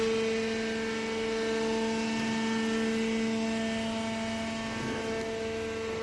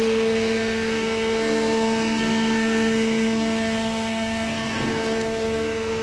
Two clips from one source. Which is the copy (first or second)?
second